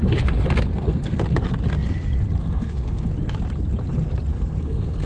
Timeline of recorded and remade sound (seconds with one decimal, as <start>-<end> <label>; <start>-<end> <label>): 0.0-0.7 recorded; 0.7-1.2 remade; 1.2-2.4 recorded; 2.4-3.1 remade; 3.1-4.3 recorded; 4.3-5.1 remade